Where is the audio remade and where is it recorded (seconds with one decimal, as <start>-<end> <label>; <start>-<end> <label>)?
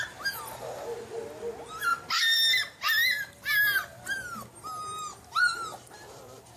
0.0-6.6 recorded